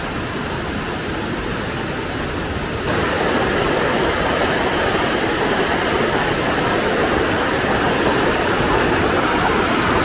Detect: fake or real fake